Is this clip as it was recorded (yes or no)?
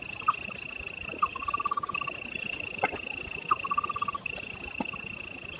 yes